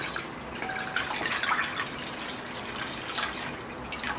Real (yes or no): yes